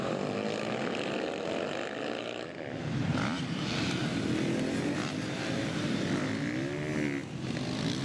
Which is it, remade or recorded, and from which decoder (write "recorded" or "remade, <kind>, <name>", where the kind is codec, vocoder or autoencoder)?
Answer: recorded